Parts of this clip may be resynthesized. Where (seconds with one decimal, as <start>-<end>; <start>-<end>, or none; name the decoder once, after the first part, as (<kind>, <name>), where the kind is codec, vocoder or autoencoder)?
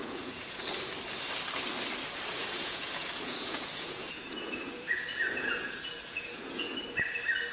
0.0-0.6 (vocoder, Vocos); 2.4-6.7